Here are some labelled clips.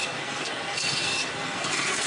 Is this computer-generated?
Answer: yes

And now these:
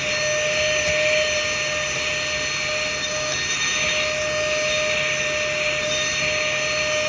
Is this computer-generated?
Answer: no